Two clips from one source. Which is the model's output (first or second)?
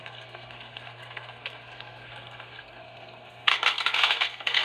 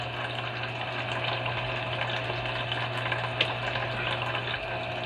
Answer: first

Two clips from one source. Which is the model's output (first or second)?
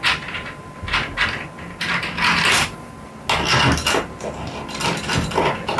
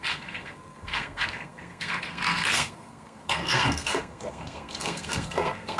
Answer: second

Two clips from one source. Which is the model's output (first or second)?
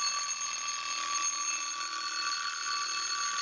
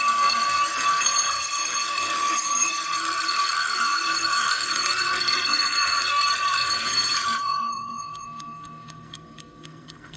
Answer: second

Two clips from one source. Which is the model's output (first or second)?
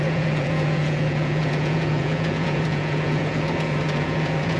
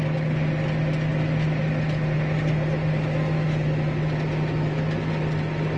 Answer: first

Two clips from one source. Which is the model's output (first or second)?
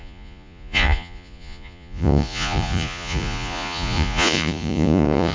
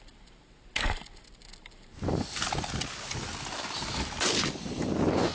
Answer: first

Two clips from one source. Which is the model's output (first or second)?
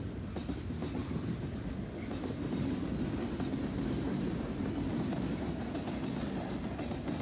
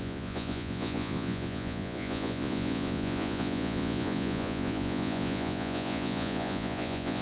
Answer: second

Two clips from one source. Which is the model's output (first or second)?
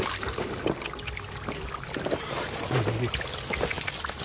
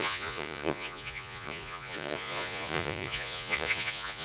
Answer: second